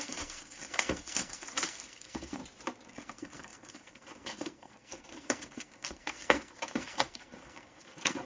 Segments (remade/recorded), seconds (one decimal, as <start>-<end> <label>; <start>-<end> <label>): 0.0-2.4 remade; 2.4-2.9 recorded; 2.9-8.3 remade